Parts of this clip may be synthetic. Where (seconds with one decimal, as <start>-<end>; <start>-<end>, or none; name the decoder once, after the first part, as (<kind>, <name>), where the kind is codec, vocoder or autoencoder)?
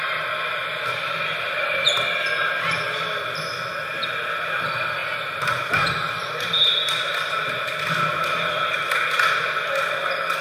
none